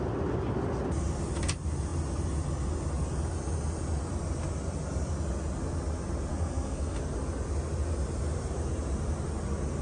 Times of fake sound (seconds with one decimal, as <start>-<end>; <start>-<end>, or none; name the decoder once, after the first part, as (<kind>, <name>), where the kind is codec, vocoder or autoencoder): 6.3-7.0 (codec, SNAC)